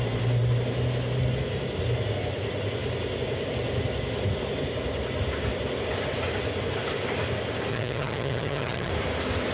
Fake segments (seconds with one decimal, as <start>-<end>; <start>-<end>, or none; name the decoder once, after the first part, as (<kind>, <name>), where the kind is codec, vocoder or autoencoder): 7.7-8.9 (vocoder, HiFi-GAN)